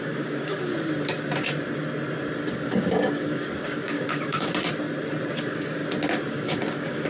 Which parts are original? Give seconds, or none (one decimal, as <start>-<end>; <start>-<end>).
0.7-2.5; 4.5-5.3; 5.8-6.3